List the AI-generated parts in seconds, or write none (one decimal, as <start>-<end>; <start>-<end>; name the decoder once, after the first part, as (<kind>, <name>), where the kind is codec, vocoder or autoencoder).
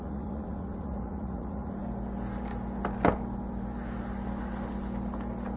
0.0-1.8 (vocoder, Vocos)